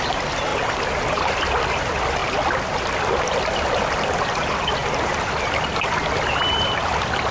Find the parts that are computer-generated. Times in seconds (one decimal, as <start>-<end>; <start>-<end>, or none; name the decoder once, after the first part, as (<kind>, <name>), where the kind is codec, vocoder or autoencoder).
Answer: 0.0-0.5 (vocoder, BigVGAN v2); 1.4-7.3